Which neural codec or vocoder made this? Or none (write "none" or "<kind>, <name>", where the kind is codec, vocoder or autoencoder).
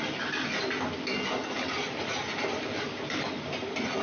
none